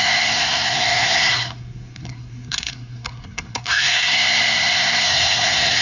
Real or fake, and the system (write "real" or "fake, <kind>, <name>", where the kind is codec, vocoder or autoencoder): fake, codec, SNAC